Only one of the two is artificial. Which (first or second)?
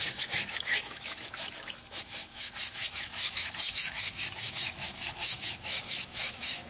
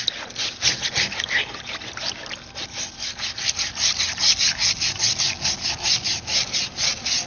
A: first